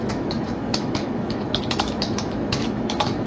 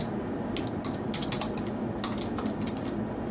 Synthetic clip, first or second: first